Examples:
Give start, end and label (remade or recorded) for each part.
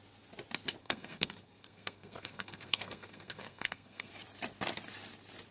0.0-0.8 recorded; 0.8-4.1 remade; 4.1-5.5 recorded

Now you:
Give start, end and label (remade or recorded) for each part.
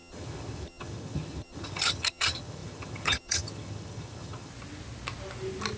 0.0-4.5 remade; 4.5-5.8 recorded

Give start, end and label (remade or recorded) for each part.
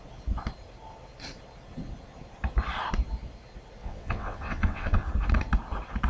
0.0-3.8 recorded; 3.8-5.1 remade; 5.1-6.1 recorded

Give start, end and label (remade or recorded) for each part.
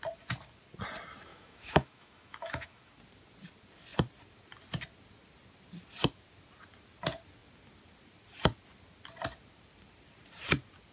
0.0-1.3 recorded; 1.3-2.9 remade; 2.9-10.9 recorded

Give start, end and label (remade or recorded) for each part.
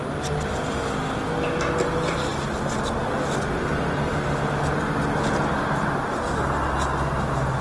0.0-7.6 recorded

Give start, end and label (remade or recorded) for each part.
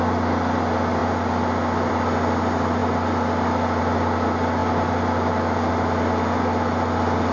0.0-7.3 recorded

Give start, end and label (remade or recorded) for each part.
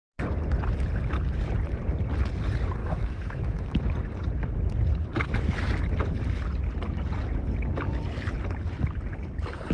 0.0-2.8 recorded; 2.8-3.9 remade; 3.9-9.7 recorded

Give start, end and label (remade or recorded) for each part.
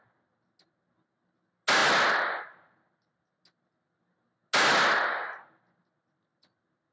0.0-6.9 recorded